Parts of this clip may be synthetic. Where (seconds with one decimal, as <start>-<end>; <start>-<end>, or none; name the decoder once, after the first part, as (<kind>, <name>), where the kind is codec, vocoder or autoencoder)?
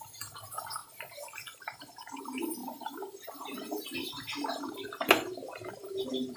none